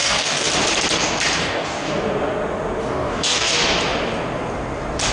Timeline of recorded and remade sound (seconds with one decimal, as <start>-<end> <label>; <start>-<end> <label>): 0.0-0.5 remade; 0.5-1.4 recorded; 1.4-1.9 remade; 1.9-2.8 recorded; 2.8-3.5 remade; 3.5-5.1 recorded